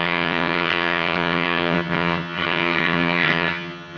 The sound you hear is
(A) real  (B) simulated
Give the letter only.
B